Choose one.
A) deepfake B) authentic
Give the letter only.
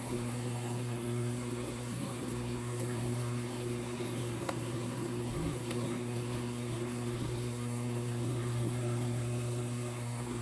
A